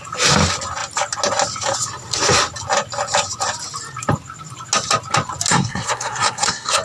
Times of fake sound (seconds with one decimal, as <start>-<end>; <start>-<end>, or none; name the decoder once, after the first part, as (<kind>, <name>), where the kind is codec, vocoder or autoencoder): 5.5-6.8 (codec, SNAC)